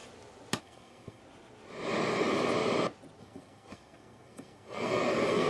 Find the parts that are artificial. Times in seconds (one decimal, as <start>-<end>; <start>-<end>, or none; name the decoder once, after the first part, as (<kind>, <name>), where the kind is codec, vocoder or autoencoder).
0.6-1.2 (codec, SNAC); 3.2-5.5